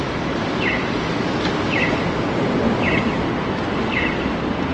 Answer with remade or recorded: recorded